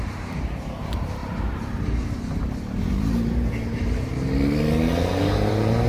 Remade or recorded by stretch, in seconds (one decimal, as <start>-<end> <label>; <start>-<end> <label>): 0.0-4.1 remade; 4.1-5.5 recorded; 5.5-5.9 remade